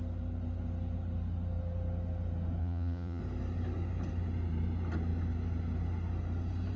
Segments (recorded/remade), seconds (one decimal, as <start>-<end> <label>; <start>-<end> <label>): 0.0-2.6 recorded; 2.6-3.2 remade; 3.2-6.8 recorded